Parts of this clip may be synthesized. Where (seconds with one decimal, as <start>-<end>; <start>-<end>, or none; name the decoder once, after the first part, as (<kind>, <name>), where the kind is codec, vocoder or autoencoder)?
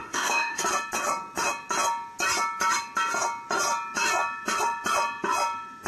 0.0-0.6 (autoencoder, DAC-VAE)